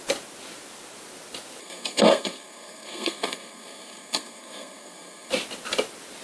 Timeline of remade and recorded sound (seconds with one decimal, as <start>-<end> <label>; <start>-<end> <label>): 0.0-1.6 recorded; 1.6-5.3 remade; 5.3-6.2 recorded